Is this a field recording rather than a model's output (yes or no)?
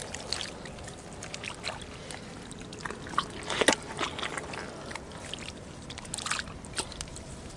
yes